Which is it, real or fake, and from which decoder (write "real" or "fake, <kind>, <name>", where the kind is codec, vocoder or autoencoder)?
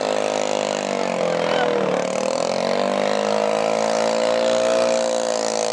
real